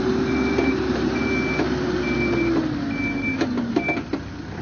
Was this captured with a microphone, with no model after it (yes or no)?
yes